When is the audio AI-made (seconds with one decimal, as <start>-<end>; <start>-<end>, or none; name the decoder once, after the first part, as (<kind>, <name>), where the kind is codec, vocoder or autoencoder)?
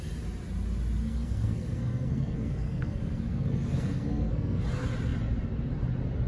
1.0-4.6 (codec, SNAC)